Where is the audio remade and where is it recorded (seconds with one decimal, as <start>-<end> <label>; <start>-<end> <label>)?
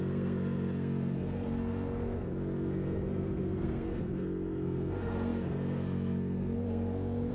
0.0-7.3 remade